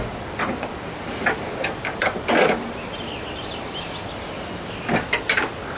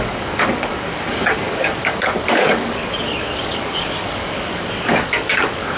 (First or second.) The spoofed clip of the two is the second